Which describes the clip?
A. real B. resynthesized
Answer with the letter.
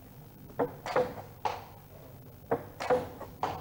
A